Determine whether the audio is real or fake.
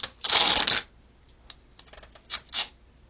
real